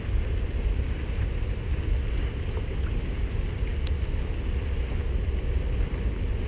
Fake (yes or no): no